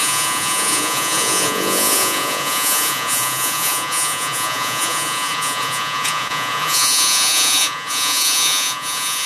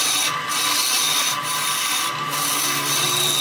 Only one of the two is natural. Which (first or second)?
second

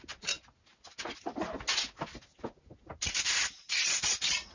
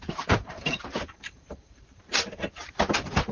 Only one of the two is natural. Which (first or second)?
first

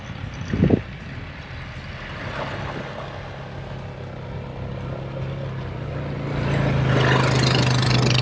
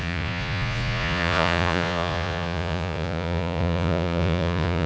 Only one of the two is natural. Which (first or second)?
first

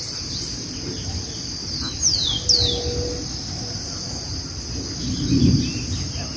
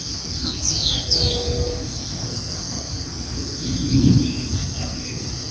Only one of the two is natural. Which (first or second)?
first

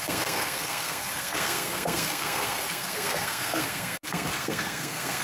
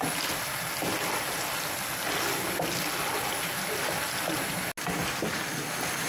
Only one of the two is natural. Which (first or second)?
second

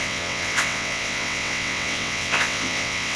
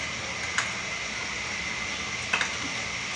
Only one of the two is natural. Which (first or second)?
second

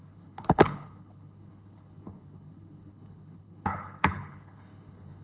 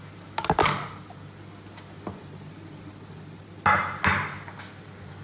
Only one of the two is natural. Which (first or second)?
second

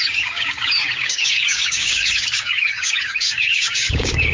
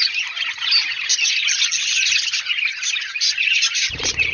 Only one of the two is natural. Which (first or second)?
second